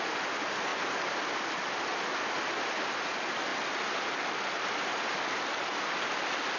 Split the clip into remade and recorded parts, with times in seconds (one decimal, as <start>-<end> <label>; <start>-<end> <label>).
0.0-6.6 recorded